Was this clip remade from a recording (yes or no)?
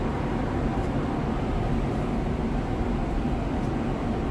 no